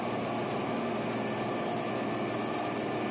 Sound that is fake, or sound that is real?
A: real